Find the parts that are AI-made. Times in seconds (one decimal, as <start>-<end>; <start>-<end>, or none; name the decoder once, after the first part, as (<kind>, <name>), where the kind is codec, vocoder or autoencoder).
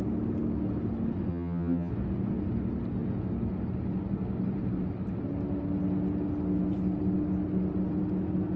1.3-1.9 (vocoder, HiFi-GAN)